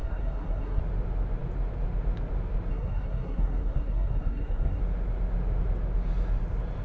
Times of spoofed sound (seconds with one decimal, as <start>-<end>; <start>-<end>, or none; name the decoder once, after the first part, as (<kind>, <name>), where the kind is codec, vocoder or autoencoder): 0.0-0.8 (codec, SNAC); 2.7-4.8